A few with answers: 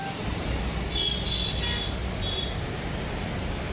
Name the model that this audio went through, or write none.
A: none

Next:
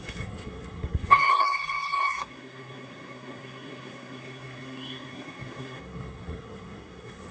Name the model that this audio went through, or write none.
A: codec, SNAC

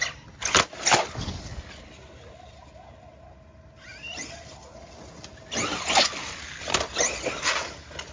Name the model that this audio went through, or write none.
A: none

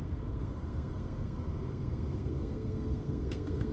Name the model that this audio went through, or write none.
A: codec, SNAC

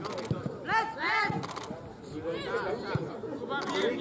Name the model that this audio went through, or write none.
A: none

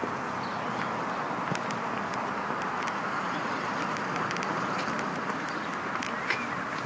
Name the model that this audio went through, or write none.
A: vocoder, BigVGAN v2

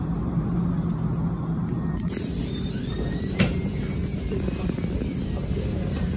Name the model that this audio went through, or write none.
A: none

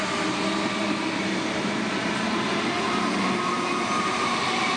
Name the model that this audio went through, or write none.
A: none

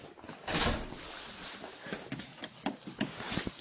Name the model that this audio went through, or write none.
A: none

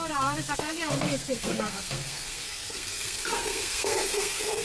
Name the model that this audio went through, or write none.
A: codec, SNAC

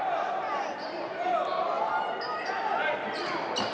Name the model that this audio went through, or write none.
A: none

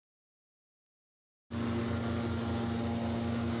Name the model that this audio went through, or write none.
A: none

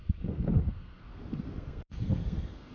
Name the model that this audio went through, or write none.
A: codec, SNAC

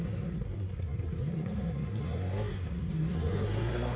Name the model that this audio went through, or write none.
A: codec, SNAC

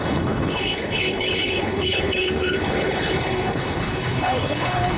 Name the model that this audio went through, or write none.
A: codec, HILCodec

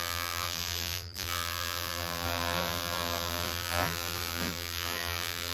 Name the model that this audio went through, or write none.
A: vocoder, BigVGAN v2